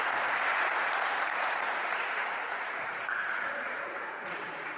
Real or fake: fake